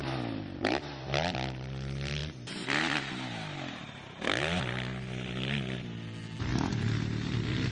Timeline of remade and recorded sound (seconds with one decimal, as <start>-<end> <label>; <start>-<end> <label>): 0.0-7.7 recorded